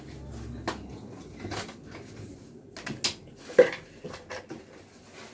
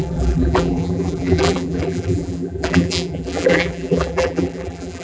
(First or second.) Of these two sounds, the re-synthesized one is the second